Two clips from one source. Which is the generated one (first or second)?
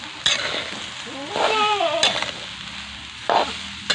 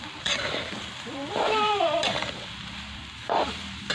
second